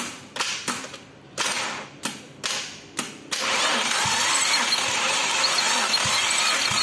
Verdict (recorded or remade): recorded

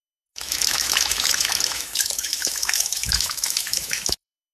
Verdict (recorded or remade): remade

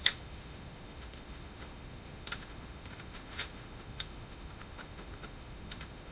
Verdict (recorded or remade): remade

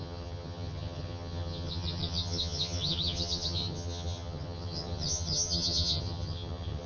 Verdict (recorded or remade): remade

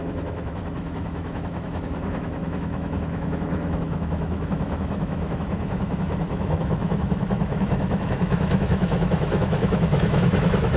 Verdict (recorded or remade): remade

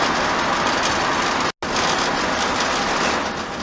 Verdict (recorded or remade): recorded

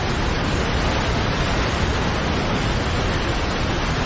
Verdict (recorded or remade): recorded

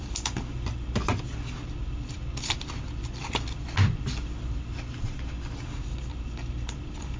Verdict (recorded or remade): recorded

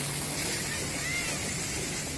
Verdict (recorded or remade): recorded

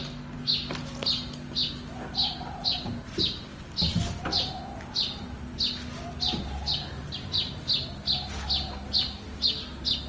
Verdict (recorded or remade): recorded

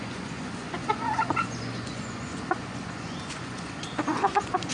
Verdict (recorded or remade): remade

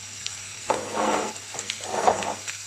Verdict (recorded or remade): remade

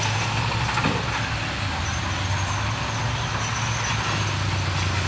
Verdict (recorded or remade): recorded